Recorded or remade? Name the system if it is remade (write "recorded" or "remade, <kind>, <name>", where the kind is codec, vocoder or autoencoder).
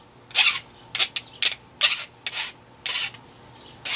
recorded